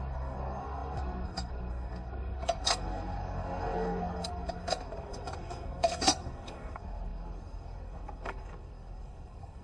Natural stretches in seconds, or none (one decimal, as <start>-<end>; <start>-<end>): none